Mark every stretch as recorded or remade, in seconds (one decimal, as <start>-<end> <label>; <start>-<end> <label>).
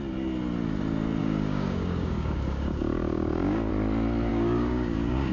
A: 0.0-1.2 recorded; 1.2-3.7 remade; 3.7-4.3 recorded; 4.3-5.3 remade